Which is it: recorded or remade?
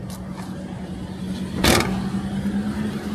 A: recorded